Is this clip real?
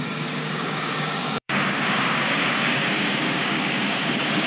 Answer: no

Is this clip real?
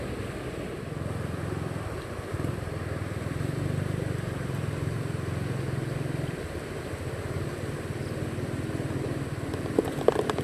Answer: yes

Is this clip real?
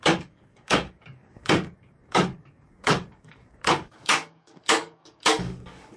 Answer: no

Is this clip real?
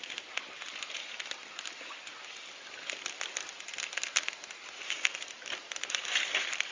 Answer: yes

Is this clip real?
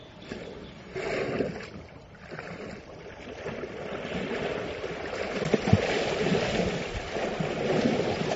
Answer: yes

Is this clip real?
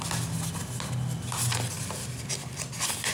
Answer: yes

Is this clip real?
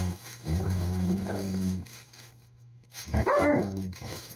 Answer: no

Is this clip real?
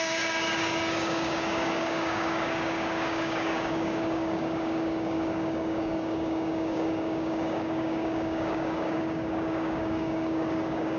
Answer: no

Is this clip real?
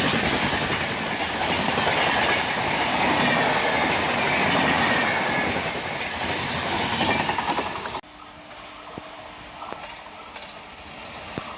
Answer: yes